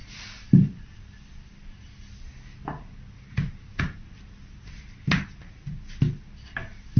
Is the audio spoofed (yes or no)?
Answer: no